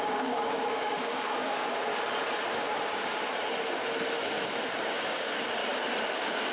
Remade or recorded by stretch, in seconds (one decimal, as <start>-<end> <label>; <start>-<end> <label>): 0.0-1.9 remade; 1.9-4.8 recorded; 4.8-5.6 remade; 5.6-6.1 recorded; 6.1-6.5 remade